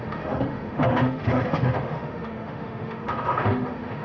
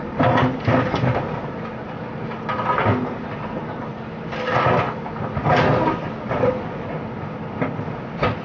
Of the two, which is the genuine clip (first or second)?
second